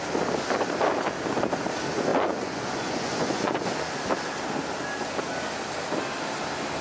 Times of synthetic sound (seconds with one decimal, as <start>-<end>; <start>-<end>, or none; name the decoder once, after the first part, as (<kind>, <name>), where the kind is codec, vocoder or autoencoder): 2.1-3.7 (vocoder, Vocos)